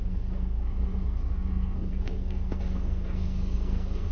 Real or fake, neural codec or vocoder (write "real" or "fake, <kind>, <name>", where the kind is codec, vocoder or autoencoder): fake, codec, SNAC